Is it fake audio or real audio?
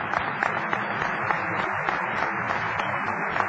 real